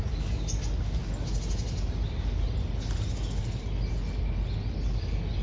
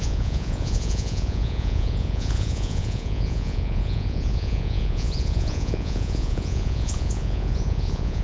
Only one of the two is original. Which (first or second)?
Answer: first